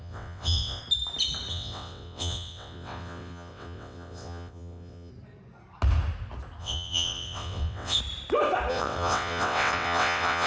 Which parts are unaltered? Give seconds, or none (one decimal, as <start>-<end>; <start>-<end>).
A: 0.8-1.5; 5.1-6.6; 8.0-8.7